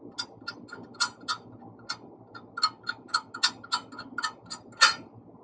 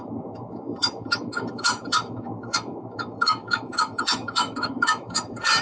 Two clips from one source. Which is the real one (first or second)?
first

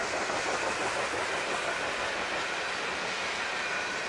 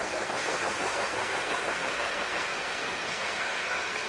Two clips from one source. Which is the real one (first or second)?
first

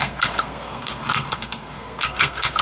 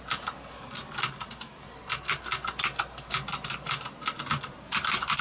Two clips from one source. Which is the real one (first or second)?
second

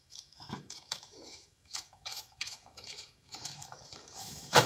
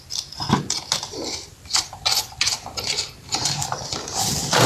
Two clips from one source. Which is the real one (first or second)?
second